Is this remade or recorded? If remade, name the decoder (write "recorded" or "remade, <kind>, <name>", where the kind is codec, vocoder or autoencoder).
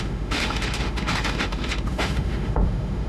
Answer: remade, autoencoder, DAC-VAE